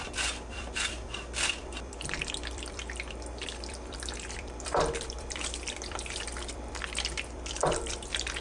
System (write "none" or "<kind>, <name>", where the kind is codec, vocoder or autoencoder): vocoder, BigVGAN v2